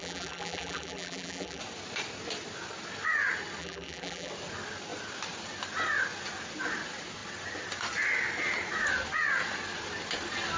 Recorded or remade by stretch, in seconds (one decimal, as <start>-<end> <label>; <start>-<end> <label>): 0.0-1.6 remade; 1.6-3.6 recorded; 3.6-4.3 remade; 4.3-10.6 recorded